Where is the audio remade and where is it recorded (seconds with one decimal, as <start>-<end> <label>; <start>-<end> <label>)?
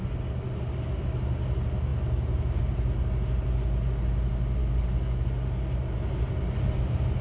0.0-4.6 recorded; 4.6-5.2 remade; 5.2-7.2 recorded